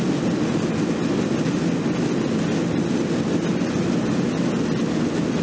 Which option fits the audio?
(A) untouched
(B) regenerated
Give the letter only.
A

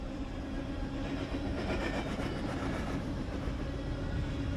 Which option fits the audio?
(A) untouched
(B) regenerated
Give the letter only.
A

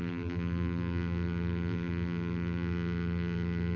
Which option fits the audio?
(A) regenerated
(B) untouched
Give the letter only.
A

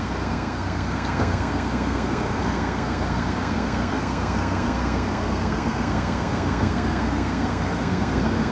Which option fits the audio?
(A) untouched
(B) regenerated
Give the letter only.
B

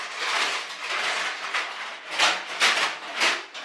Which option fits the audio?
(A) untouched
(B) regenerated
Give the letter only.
A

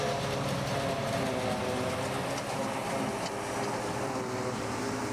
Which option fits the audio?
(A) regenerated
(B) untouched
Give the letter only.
B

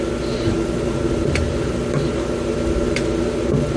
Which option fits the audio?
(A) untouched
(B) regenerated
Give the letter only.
A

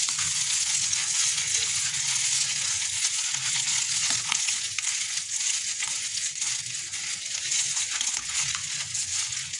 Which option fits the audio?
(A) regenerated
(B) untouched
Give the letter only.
A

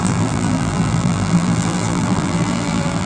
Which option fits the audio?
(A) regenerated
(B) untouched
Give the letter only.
A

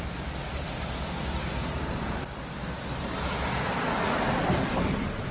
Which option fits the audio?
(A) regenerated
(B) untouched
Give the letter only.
A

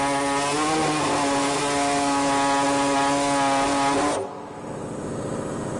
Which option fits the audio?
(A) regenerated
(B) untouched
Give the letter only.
B